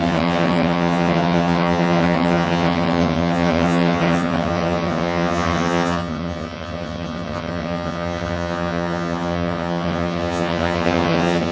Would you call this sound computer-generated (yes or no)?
yes